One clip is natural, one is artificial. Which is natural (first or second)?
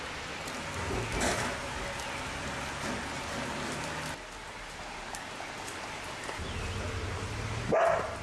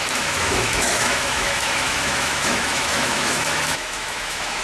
first